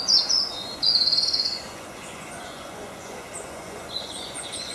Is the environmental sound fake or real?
fake